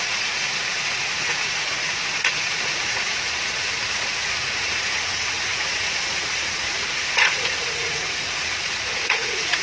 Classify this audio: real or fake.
fake